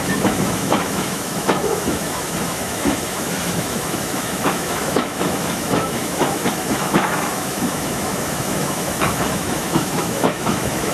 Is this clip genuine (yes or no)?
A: no